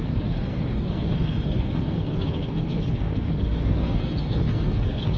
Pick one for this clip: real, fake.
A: fake